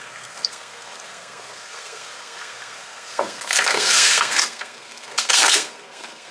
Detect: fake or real fake